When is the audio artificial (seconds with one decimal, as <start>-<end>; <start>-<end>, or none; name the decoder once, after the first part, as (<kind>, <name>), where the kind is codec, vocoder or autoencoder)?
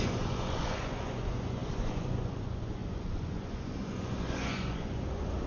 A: 0.0-5.5 (vocoder, Vocos)